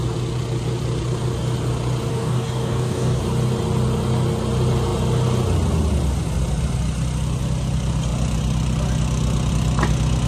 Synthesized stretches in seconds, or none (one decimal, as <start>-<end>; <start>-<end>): 2.1-3.2